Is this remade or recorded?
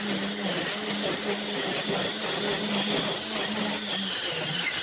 recorded